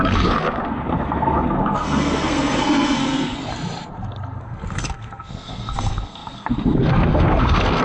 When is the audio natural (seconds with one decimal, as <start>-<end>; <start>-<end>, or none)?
3.5-4.4